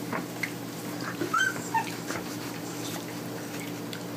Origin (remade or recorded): remade